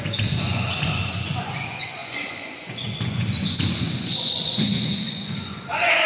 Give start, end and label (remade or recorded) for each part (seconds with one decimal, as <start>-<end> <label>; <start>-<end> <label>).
0.0-6.1 remade